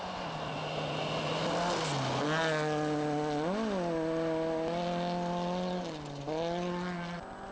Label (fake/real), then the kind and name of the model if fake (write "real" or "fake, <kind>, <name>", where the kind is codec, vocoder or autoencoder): real